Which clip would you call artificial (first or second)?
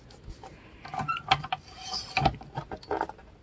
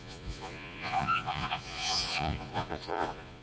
second